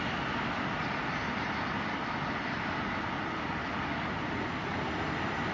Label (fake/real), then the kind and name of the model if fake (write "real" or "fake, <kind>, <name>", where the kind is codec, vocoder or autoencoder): real